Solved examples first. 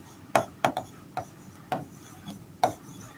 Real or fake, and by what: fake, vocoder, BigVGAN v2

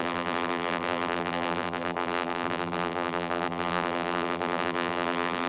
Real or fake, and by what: fake, vocoder, BigVGAN v2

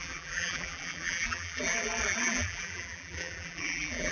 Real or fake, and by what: fake, vocoder, BigVGAN v2